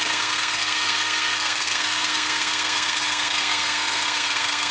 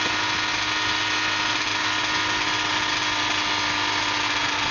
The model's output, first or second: first